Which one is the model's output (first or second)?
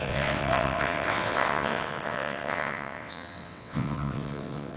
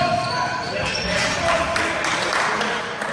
first